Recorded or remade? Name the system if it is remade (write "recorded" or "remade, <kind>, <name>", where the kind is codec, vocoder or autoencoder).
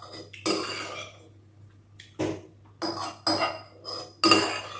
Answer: recorded